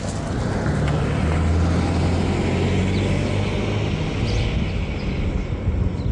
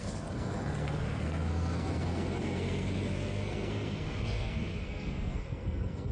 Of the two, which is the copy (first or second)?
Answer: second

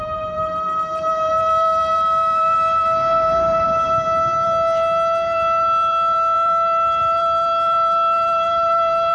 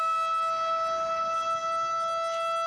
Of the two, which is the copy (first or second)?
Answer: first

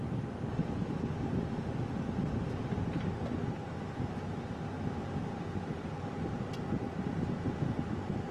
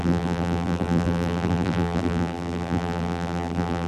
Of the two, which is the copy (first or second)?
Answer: second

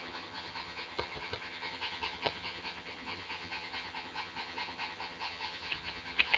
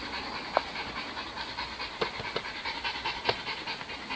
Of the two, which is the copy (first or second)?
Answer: first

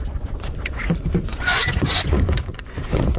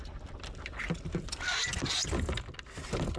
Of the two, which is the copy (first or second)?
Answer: first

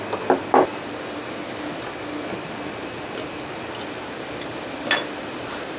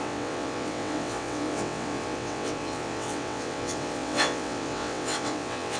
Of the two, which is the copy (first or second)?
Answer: second